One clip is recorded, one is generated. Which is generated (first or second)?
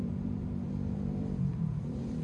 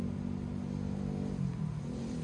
first